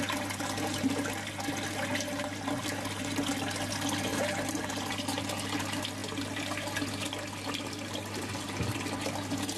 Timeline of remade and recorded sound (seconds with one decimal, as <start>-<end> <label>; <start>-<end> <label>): 0.0-4.1 recorded; 4.1-4.9 remade; 4.9-9.6 recorded